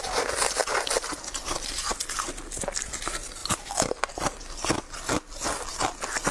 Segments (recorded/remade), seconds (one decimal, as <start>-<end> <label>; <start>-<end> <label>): 0.0-3.4 recorded; 3.4-4.1 remade; 4.1-6.3 recorded